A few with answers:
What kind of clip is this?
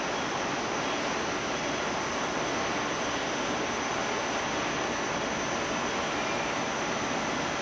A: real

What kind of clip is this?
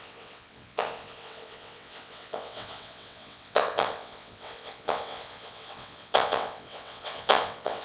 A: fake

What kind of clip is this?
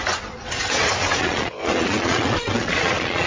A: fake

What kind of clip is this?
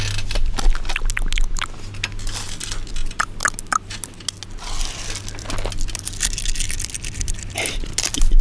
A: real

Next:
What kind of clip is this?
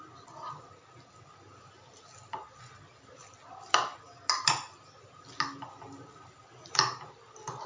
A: real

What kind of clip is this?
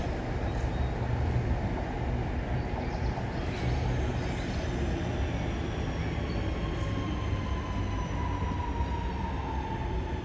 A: real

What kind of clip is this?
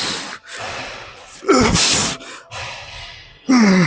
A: real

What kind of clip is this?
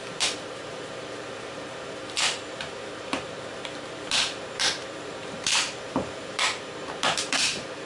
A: fake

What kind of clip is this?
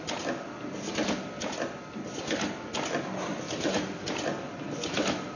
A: real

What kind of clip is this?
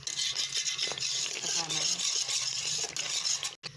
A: real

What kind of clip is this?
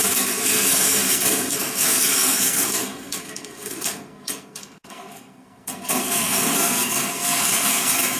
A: fake